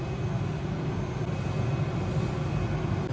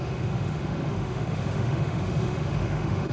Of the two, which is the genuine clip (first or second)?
first